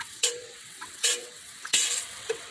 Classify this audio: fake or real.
fake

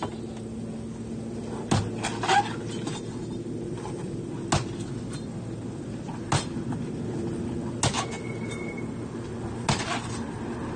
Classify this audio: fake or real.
real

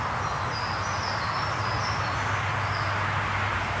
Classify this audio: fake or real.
real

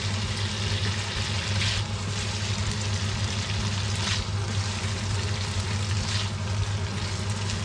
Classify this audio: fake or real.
real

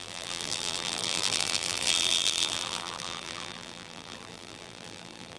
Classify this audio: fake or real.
fake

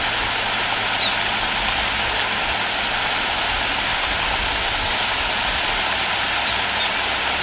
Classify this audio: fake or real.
real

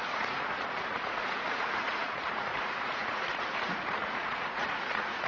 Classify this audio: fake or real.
fake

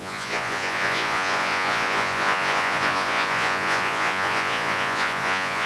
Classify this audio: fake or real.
fake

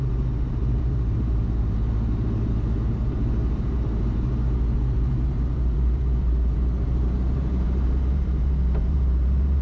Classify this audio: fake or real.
fake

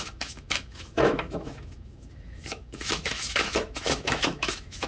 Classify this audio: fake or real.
fake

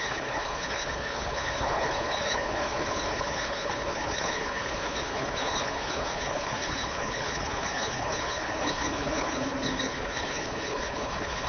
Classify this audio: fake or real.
fake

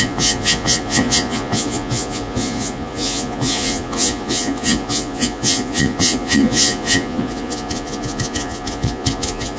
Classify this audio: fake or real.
fake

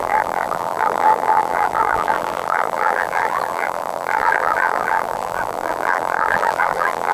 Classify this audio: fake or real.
fake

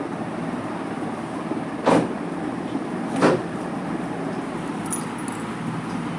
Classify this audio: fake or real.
real